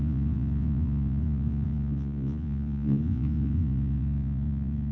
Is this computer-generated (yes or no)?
yes